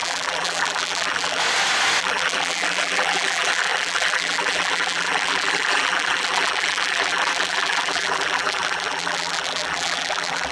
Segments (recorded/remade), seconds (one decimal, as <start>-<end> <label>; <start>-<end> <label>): 0.0-1.4 remade; 1.4-2.0 recorded; 2.0-10.5 remade